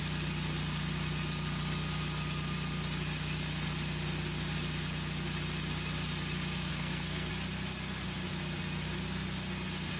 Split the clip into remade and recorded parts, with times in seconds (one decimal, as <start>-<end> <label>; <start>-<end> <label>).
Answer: 0.0-6.7 recorded; 6.7-7.3 remade; 7.3-10.0 recorded